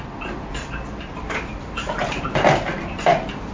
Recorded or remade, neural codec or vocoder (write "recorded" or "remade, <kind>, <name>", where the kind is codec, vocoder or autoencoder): recorded